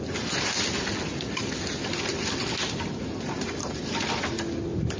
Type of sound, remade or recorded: recorded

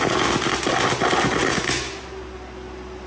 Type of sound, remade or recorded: recorded